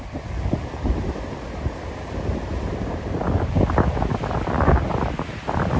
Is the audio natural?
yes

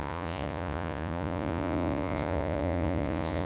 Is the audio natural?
no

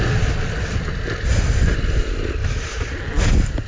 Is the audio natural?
yes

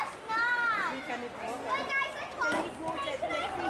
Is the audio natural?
yes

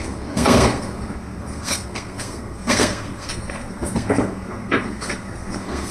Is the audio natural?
no